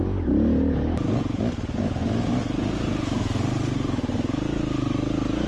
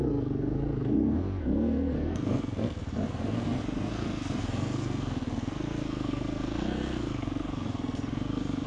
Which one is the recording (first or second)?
first